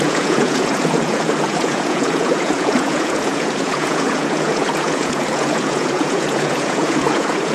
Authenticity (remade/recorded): remade